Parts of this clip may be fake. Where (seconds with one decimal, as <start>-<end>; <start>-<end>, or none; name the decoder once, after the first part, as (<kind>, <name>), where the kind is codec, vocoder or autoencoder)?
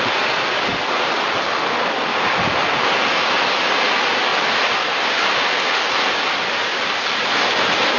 none